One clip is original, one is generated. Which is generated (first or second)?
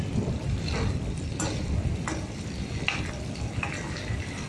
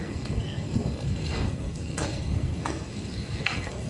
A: second